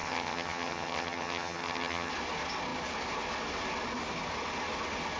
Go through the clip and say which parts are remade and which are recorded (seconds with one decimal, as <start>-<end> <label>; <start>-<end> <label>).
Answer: 0.0-2.1 remade; 2.1-5.2 recorded